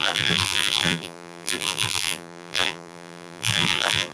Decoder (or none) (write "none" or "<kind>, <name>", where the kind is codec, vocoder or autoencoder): vocoder, BigVGAN v2